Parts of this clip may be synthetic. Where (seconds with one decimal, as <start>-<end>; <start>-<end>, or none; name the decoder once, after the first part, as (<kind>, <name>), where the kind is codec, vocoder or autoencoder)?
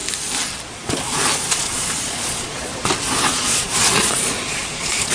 0.7-2.7 (vocoder, Vocos); 3.3-5.1